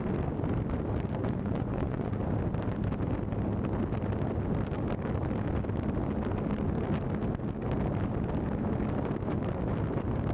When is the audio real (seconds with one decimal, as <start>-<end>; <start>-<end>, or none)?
0.0-1.2; 2.1-10.3